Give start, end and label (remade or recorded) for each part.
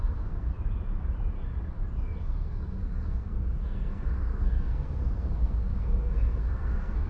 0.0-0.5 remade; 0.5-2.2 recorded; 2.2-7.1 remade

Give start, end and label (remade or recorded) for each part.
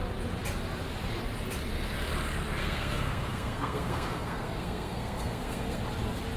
0.0-2.6 recorded; 2.6-5.8 remade; 5.8-6.4 recorded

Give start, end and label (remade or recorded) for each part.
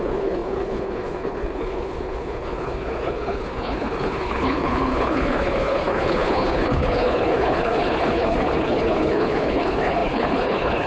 0.0-10.9 remade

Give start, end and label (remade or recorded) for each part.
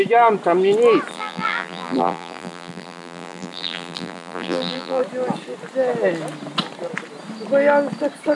0.0-1.1 recorded; 1.1-5.0 remade; 5.0-8.3 recorded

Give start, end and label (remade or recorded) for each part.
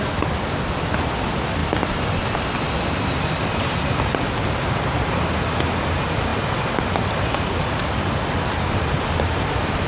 0.0-9.9 recorded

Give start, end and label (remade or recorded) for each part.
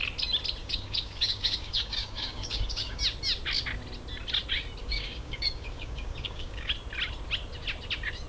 0.0-0.6 recorded; 0.6-3.0 remade; 3.0-4.8 recorded; 4.8-6.7 remade; 6.7-8.3 recorded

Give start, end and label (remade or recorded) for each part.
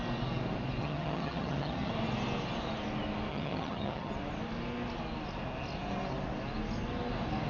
0.0-0.8 recorded; 0.8-1.9 remade; 1.9-3.3 recorded; 3.3-4.1 remade; 4.1-7.5 recorded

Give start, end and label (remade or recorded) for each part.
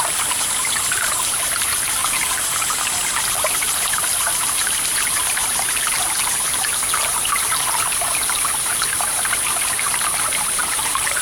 0.0-2.0 remade; 2.0-3.3 recorded; 3.3-4.6 remade; 4.6-9.4 recorded; 9.4-11.2 remade